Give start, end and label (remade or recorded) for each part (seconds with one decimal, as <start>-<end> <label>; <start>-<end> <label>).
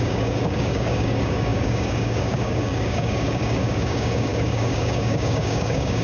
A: 0.0-6.0 remade